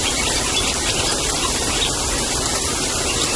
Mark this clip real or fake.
fake